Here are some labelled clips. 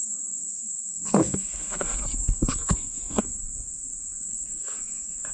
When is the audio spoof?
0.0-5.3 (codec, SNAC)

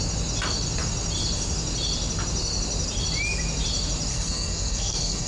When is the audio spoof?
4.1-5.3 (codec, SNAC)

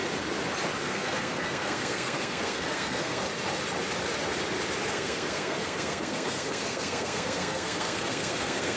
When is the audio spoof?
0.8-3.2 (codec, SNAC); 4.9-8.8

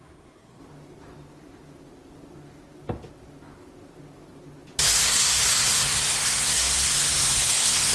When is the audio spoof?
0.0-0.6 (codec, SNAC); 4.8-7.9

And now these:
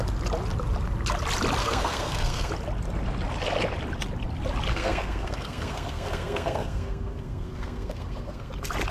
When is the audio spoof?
1.6-2.5 (codec, SNAC); 4.7-8.5